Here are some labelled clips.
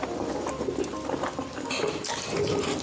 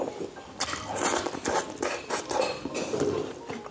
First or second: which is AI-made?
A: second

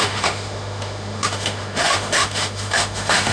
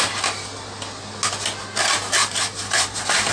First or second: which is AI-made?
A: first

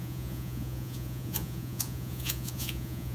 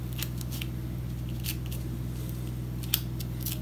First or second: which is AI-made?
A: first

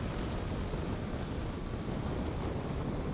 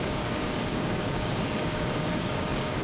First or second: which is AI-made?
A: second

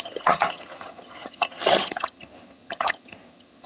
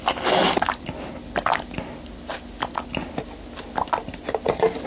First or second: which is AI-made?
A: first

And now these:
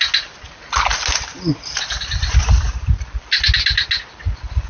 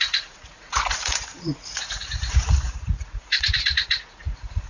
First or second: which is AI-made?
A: second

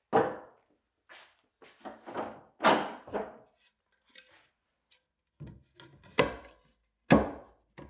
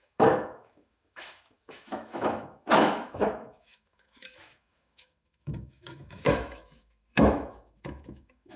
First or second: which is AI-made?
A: second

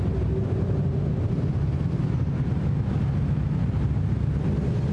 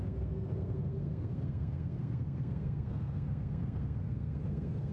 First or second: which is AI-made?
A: second